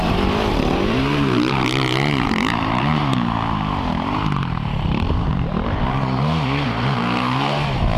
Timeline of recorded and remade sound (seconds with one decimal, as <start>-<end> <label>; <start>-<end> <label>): 0.0-8.0 remade